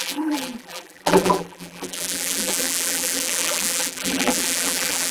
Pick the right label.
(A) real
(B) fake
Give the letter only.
B